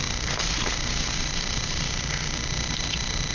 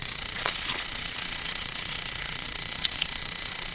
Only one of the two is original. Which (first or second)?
first